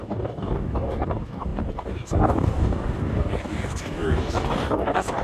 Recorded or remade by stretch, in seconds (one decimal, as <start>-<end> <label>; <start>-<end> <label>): 0.0-5.2 remade